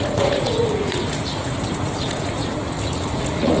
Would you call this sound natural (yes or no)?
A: no